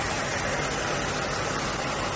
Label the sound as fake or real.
real